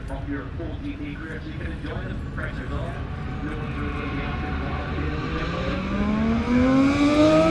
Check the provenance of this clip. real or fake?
real